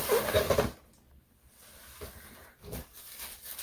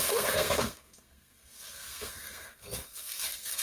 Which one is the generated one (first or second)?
second